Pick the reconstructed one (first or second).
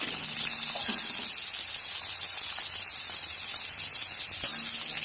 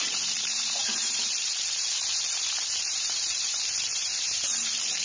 second